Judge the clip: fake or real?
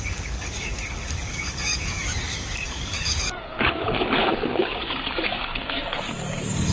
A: fake